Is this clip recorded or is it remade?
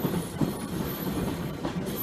remade